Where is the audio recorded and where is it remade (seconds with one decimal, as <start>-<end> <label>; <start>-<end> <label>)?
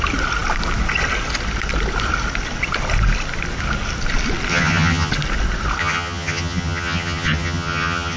0.0-4.5 recorded; 4.5-5.1 remade; 5.1-5.8 recorded; 5.8-8.2 remade